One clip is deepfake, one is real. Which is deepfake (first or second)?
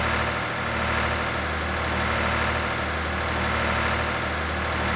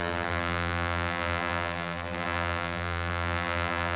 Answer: second